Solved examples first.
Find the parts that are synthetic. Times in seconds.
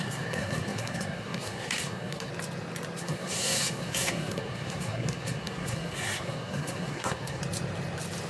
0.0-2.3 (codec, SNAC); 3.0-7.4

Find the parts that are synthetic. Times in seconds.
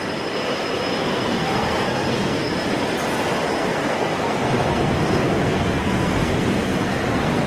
1.0-2.5 (codec, SNAC); 3.6-7.5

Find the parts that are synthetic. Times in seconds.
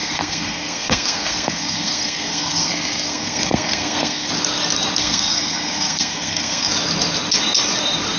0.0-4.3 (codec, SNAC); 5.0-6.7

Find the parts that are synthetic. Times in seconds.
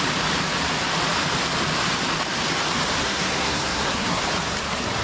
3.0-4.2 (codec, SNAC)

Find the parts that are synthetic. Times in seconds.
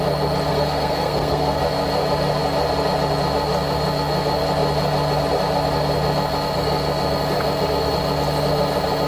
0.5-1.6 (codec, SNAC)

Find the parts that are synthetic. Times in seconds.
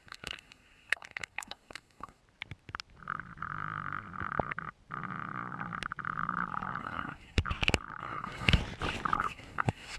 0.0-2.2 (codec, SNAC); 6.8-7.4; 8.0-8.6; 9.2-10.0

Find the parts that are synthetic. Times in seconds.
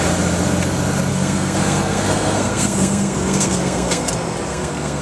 1.1-4.1 (codec, SNAC); 4.5-5.0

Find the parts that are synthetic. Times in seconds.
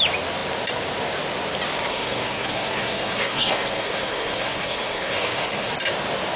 1.9-5.7 (codec, SNAC)